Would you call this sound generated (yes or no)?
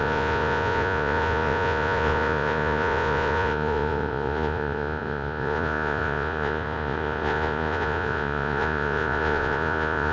yes